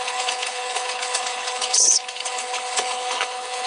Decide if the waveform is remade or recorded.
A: remade